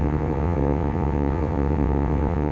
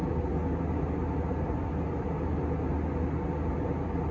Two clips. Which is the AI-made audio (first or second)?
first